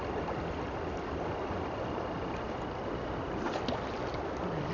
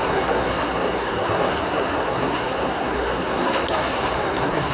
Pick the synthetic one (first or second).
second